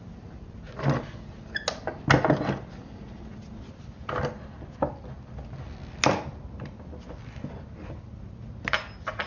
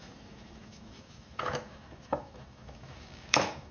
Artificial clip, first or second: second